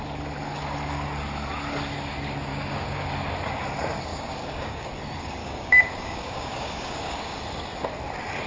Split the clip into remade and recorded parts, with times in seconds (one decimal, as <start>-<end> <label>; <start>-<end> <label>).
0.0-2.5 recorded; 2.5-3.1 remade; 3.1-4.1 recorded; 4.1-4.9 remade; 4.9-5.4 recorded; 5.4-7.4 remade; 7.4-8.5 recorded